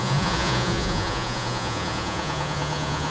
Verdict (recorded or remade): remade